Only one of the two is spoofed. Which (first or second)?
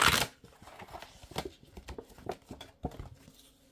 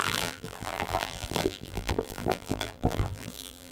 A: second